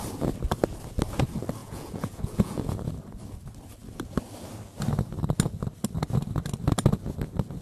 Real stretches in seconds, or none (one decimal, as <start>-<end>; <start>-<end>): 0.0-1.6; 2.9-7.6